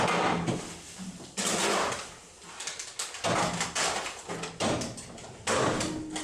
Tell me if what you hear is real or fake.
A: real